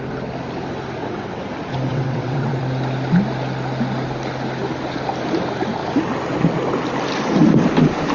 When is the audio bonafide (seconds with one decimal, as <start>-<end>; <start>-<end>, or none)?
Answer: 0.0-1.0; 1.5-1.9; 2.6-8.1